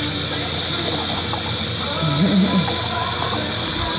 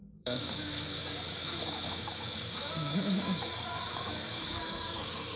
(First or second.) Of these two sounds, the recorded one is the first